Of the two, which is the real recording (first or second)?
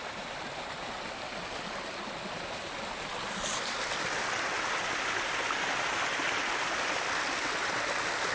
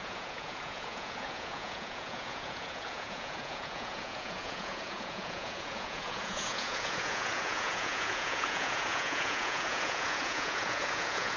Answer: first